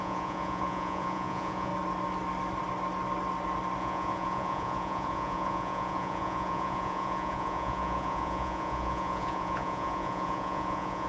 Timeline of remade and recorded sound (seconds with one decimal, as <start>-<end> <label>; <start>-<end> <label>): 0.0-1.7 remade; 1.7-3.8 recorded; 3.8-11.1 remade